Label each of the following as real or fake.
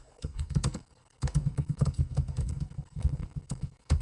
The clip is fake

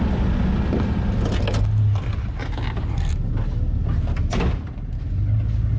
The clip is real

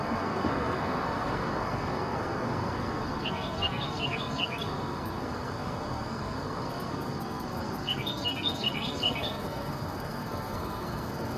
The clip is fake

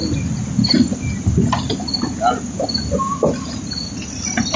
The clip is real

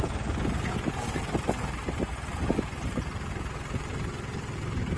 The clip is real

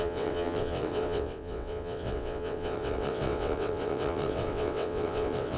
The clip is fake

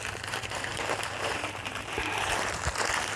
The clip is fake